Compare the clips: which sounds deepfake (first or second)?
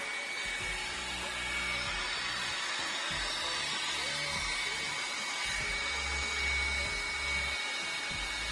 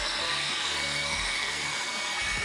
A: second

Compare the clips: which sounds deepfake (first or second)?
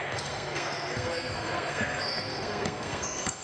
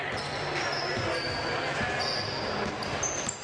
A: first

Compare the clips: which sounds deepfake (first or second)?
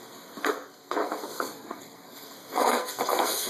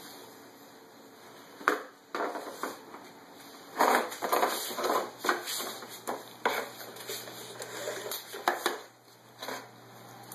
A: first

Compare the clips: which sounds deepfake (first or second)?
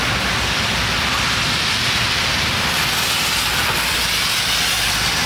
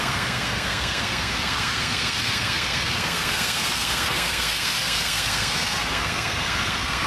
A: second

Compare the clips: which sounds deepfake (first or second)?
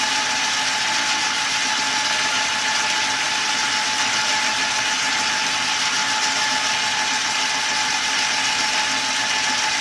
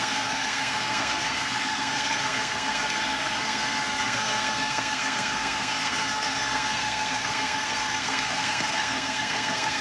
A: second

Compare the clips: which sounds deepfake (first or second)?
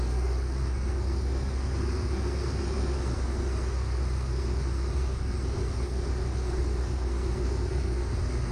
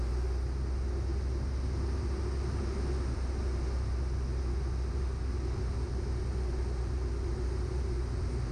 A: first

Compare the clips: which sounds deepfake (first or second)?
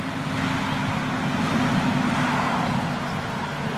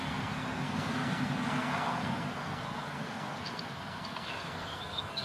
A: second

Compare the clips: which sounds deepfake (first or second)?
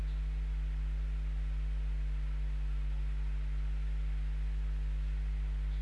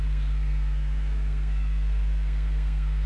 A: second